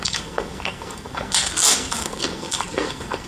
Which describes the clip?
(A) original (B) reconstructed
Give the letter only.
B